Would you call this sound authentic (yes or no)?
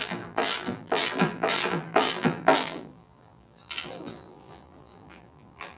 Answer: no